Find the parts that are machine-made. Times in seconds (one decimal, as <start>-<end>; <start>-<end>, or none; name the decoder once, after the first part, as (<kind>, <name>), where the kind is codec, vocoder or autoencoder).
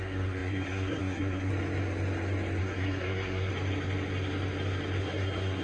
0.0-1.5 (codec, SNAC); 2.6-3.5; 5.0-5.6